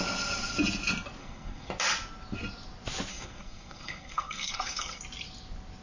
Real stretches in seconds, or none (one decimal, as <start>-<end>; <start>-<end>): 0.0-1.2; 1.7-3.1; 5.0-5.8